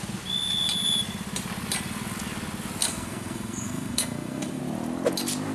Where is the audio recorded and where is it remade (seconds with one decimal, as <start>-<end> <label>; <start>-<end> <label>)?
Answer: 0.0-2.8 recorded; 2.8-4.6 remade; 4.6-5.5 recorded